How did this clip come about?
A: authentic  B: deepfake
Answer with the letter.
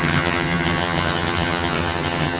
B